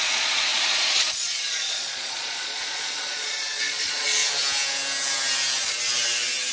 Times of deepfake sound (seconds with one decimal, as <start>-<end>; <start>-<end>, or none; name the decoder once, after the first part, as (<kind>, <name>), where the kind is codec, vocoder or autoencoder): 0.0-4.2 (vocoder, Vocos)